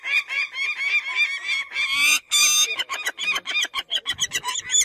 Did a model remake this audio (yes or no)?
no